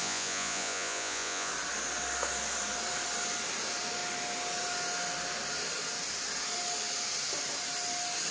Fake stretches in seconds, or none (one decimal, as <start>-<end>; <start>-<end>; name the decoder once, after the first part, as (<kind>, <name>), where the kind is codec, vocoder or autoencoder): 0.0-1.5 (vocoder, Vocos)